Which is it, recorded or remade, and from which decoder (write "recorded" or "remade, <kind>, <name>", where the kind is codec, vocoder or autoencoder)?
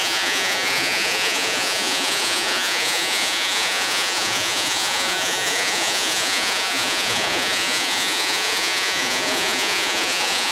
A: remade, vocoder, Vocos